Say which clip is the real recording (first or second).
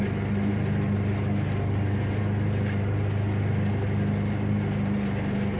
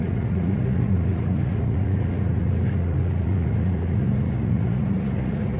first